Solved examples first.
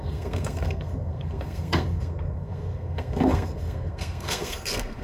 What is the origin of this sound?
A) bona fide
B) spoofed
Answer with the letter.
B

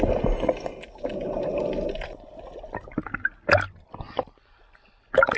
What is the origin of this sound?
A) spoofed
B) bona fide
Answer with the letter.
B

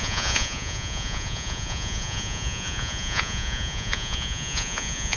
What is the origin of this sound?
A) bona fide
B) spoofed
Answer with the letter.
B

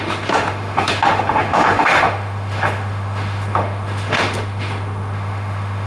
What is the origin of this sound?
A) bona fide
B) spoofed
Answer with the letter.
B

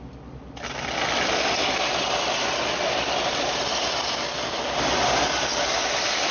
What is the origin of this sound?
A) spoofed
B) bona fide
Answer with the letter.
B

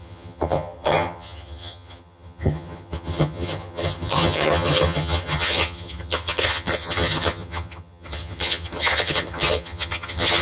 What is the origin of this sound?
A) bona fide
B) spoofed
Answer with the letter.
B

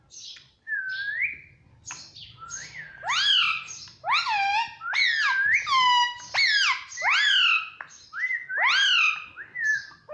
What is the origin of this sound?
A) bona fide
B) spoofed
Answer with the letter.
A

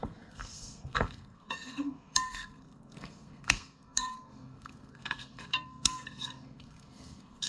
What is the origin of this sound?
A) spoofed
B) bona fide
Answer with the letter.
A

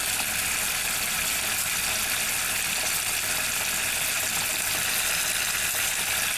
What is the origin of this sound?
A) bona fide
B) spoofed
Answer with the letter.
A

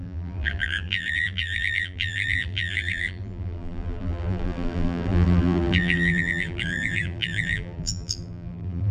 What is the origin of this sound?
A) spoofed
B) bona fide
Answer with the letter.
A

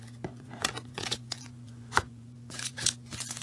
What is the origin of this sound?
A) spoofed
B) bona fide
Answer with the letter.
A